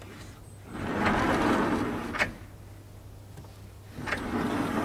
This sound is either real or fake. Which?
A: real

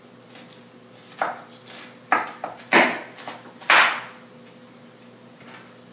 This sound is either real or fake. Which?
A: real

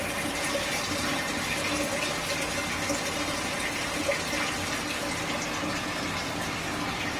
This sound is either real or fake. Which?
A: real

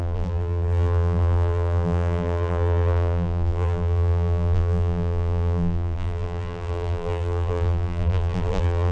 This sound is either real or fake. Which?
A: fake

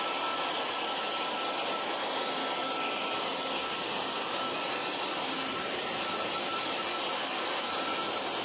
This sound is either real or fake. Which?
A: real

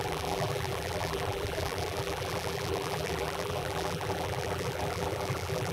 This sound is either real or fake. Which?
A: fake